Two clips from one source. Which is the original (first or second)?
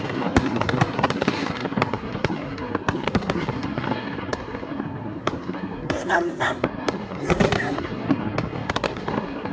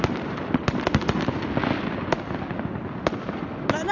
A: second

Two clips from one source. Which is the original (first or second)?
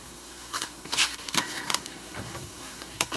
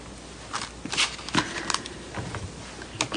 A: second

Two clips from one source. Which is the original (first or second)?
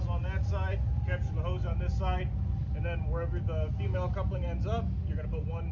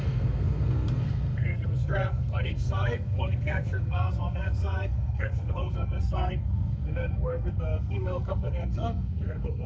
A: first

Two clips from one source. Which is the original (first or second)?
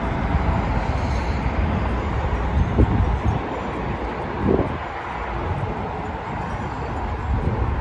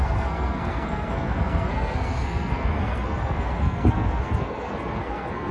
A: first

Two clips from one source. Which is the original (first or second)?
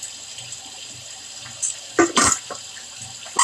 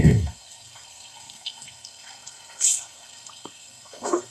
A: first